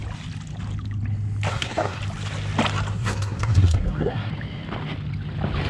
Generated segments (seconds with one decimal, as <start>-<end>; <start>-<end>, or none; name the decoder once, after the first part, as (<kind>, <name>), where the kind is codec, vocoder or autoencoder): 1.5-2.0 (codec, SNAC); 2.9-4.3